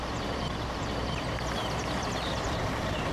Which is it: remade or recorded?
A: remade